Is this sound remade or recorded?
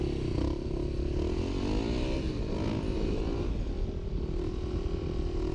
recorded